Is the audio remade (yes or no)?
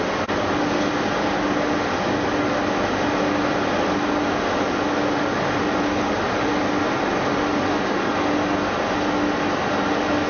no